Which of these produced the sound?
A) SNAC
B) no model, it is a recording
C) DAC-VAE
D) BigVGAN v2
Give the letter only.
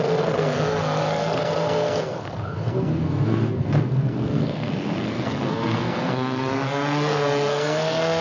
A